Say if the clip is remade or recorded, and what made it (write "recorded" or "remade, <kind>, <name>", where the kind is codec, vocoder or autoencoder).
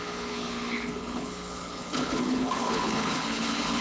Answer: remade, codec, HILCodec